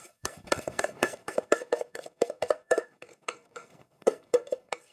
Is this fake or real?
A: fake